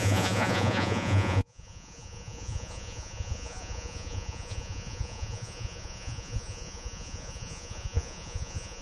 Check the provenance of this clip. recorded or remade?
remade